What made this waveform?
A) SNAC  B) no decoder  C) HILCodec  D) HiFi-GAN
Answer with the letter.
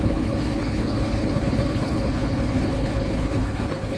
C